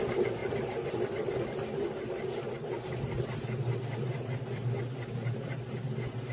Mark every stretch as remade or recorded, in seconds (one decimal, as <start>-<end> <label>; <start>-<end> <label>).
0.0-6.3 recorded